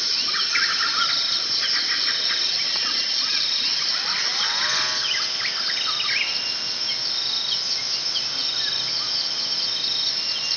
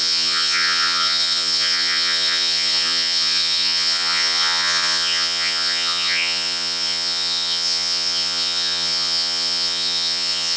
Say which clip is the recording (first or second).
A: first